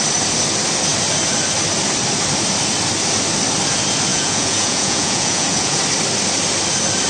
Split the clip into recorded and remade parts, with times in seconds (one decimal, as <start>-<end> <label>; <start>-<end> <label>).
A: 0.0-4.1 recorded; 4.1-5.8 remade; 5.8-7.1 recorded